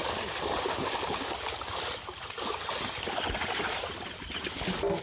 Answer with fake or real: real